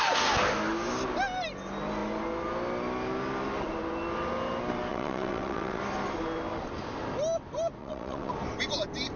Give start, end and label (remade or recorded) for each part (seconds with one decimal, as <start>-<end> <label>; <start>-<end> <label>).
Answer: 0.0-4.9 recorded; 4.9-5.8 remade; 5.8-7.8 recorded; 7.8-8.3 remade; 8.3-9.2 recorded